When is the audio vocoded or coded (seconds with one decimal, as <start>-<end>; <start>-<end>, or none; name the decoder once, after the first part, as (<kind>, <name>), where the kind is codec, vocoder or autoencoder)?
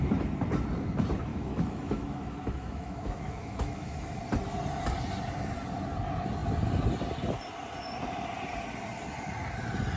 1.3-4.2 (autoencoder, DAC-VAE)